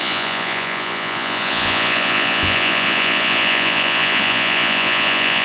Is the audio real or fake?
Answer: fake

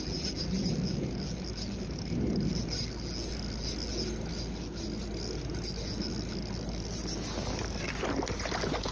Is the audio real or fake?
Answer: real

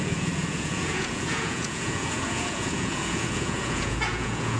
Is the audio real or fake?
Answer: fake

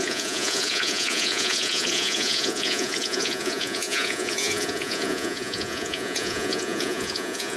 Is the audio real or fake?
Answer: fake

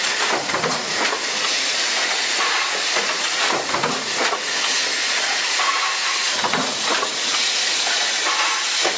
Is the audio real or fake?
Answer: fake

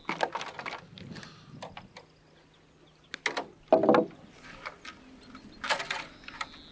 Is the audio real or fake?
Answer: real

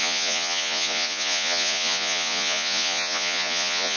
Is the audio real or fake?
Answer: fake